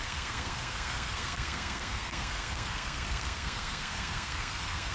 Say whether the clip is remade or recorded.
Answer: remade